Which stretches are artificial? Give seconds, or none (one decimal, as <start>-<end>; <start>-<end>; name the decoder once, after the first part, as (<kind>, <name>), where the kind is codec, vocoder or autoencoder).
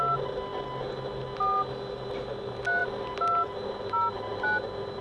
none